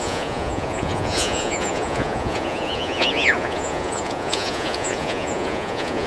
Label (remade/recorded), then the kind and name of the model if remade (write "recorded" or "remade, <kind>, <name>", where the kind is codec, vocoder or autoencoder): remade, vocoder, Vocos